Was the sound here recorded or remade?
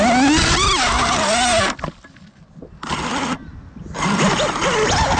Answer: recorded